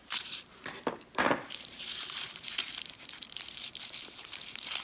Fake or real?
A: fake